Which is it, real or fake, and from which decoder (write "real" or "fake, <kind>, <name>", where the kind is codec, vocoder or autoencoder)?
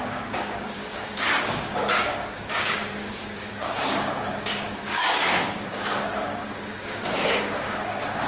fake, codec, DAC